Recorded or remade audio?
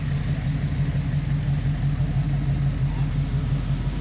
recorded